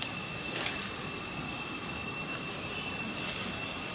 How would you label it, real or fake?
real